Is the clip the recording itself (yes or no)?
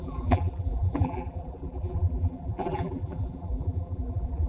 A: no